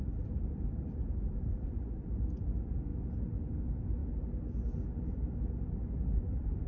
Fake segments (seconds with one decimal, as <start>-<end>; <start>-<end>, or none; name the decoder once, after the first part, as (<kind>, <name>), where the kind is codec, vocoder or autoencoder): none